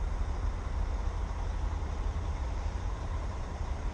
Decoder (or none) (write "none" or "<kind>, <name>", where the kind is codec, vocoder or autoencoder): vocoder, BigVGAN v2